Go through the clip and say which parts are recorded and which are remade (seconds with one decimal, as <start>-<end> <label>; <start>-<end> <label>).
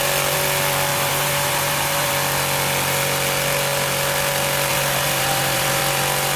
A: 0.0-0.9 recorded; 0.9-2.1 remade; 2.1-4.7 recorded; 4.7-5.8 remade; 5.8-6.4 recorded